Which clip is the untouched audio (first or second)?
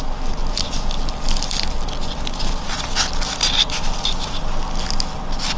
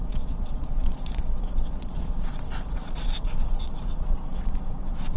first